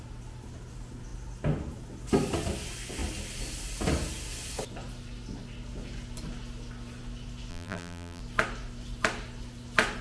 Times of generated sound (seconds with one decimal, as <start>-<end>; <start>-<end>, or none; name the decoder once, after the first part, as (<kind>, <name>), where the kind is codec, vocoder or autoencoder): 7.5-8.2 (vocoder, BigVGAN v2)